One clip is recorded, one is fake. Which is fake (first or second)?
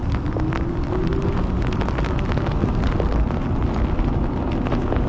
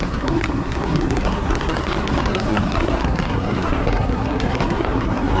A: second